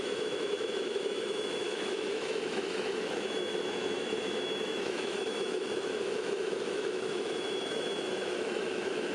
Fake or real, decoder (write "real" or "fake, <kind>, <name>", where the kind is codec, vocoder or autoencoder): fake, autoencoder, DAC-VAE